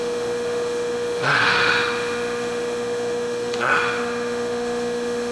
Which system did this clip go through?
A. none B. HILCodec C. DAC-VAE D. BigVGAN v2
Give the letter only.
C